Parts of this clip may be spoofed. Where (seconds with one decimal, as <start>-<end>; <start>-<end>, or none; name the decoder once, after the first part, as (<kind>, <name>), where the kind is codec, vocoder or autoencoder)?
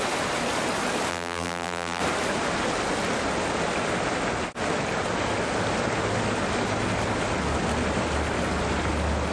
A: 1.1-2.0 (vocoder, BigVGAN v2)